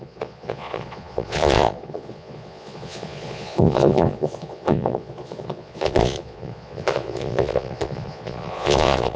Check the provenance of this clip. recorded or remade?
remade